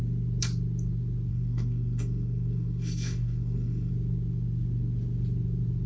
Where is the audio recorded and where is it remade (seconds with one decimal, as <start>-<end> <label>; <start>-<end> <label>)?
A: 0.0-1.3 recorded; 1.3-3.9 remade; 3.9-5.9 recorded